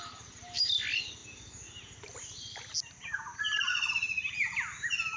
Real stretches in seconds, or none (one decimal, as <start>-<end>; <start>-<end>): 0.0-3.3; 3.9-5.2